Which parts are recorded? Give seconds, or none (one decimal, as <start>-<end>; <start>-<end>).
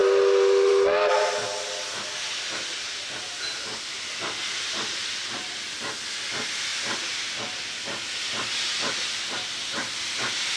0.0-10.6